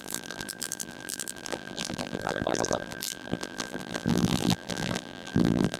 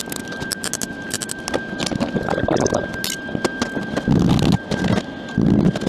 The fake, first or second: first